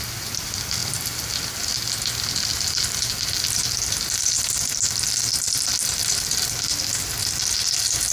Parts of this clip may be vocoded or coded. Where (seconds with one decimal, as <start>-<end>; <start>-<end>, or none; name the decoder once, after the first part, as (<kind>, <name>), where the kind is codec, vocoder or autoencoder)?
none